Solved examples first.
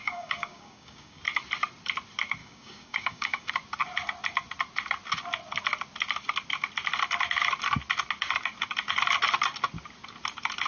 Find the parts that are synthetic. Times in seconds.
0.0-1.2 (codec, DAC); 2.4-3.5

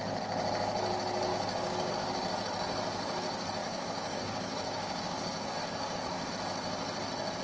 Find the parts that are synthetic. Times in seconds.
1.3-1.9 (codec, DAC); 3.6-6.3

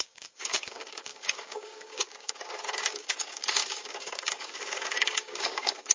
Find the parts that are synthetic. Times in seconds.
0.0-5.9 (codec, DAC)

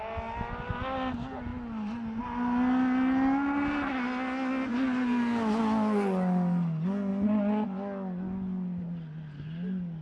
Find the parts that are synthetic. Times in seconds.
none

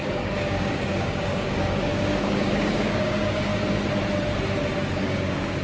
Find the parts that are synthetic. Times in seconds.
0.0-3.5 (codec, DAC); 4.9-5.6

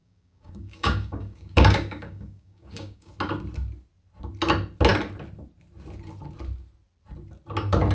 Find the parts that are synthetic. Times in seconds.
0.0-3.1 (codec, DAC)

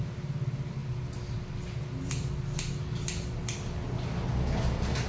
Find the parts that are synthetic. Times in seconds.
none